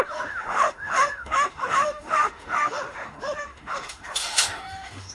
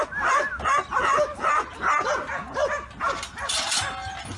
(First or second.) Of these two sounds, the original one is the second